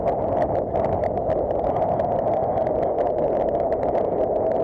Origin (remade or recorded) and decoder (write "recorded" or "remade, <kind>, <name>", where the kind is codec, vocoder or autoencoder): recorded